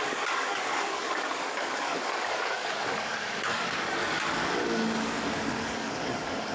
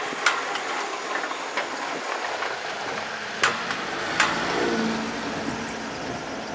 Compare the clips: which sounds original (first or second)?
second